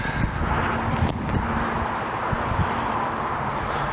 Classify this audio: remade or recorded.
recorded